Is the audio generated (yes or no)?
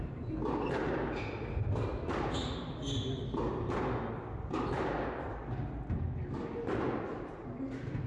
no